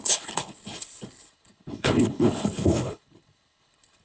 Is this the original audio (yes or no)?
no